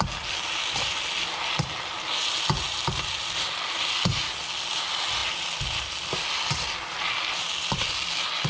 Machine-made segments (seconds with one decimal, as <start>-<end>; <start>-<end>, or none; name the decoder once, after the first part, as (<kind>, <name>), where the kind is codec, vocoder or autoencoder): none